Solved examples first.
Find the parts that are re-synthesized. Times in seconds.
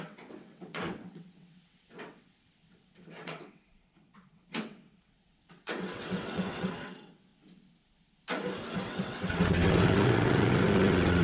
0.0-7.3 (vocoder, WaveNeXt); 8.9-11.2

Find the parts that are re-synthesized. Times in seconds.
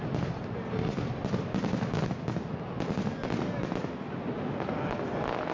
none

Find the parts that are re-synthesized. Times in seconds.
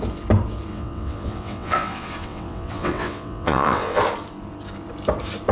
0.7-4.0 (vocoder, WaveNeXt)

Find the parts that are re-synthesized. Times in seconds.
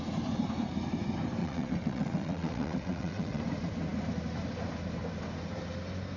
1.4-3.4 (vocoder, WaveNeXt)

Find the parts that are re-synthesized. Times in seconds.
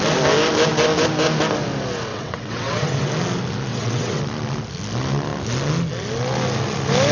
2.1-3.1 (vocoder, WaveNeXt); 3.7-4.2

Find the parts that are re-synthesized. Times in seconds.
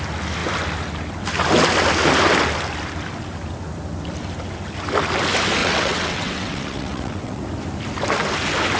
5.6-7.4 (vocoder, WaveNeXt)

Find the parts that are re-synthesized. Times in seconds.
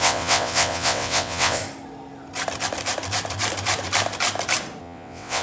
0.0-1.6 (vocoder, WaveNeXt); 4.8-5.4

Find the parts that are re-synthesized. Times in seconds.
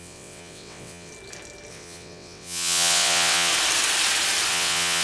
0.0-1.1 (vocoder, WaveNeXt); 1.7-3.5; 4.5-5.0